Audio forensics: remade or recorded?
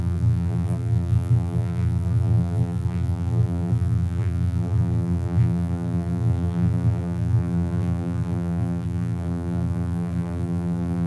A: remade